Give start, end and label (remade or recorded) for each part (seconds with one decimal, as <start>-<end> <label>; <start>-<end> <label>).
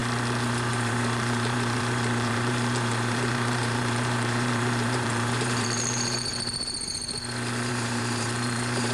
0.0-0.7 recorded; 0.7-6.3 remade; 6.3-7.7 recorded; 7.7-8.9 remade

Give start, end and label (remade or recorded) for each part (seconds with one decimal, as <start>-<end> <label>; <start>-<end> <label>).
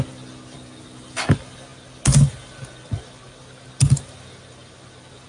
0.0-5.3 recorded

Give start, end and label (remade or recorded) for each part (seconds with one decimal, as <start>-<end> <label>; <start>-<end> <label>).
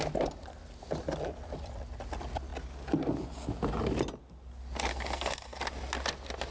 0.0-4.9 recorded; 4.9-5.6 remade; 5.6-6.5 recorded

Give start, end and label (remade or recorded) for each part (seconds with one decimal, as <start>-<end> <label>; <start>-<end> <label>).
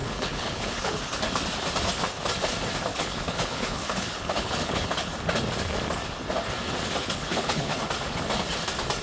0.0-1.0 remade; 1.0-2.9 recorded; 2.9-5.1 remade; 5.1-7.0 recorded; 7.0-7.7 remade; 7.7-9.0 recorded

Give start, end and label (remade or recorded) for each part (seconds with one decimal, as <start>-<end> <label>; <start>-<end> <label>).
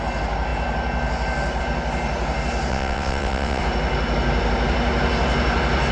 0.0-2.7 recorded; 2.7-3.6 remade; 3.6-5.9 recorded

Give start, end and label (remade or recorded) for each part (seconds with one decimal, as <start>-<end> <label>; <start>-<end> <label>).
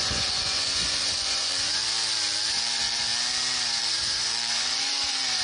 0.0-1.8 remade; 1.8-2.5 recorded; 2.5-3.1 remade; 3.1-3.8 recorded; 3.8-5.4 remade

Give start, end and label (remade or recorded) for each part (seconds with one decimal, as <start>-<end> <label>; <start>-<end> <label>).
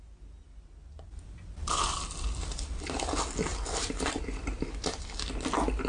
0.0-0.8 recorded; 0.8-2.8 remade; 2.8-3.5 recorded; 3.5-5.2 remade; 5.2-5.9 recorded